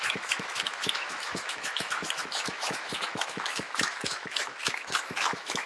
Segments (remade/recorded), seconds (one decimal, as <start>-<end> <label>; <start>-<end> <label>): 0.0-5.7 remade